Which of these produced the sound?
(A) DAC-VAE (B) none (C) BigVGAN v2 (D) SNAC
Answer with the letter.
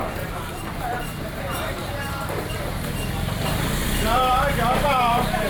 C